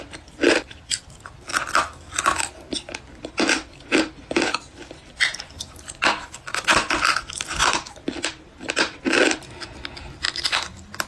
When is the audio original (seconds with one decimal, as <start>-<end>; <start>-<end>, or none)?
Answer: 0.0-11.1